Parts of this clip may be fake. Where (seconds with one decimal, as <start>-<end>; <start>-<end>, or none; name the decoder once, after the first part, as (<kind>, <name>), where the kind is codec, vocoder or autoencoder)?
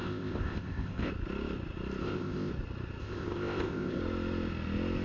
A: 0.0-1.1 (codec, ZipCodec); 2.0-2.5; 3.0-4.0